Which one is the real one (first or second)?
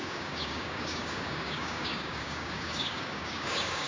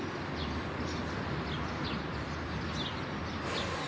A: second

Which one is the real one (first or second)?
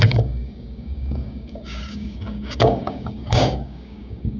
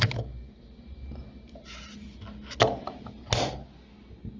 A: second